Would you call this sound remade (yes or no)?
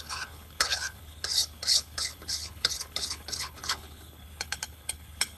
yes